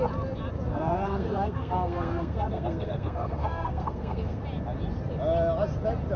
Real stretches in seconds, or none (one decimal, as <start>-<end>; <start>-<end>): 0.0-0.7; 4.4-6.2